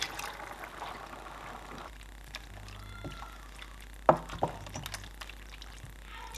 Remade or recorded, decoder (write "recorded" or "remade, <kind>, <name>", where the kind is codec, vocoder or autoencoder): recorded